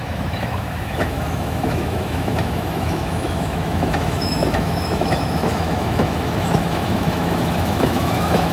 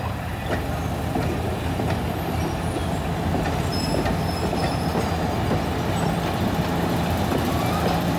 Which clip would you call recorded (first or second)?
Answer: second